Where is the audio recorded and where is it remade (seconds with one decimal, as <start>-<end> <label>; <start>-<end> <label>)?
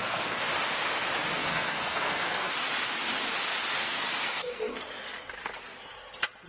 0.0-0.5 remade; 0.5-1.4 recorded; 1.4-2.5 remade; 2.5-3.8 recorded; 3.8-4.9 remade; 4.9-6.5 recorded